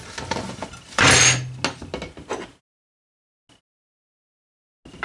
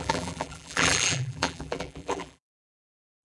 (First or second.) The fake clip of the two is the second